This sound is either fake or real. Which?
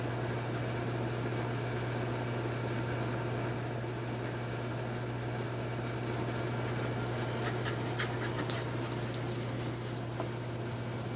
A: real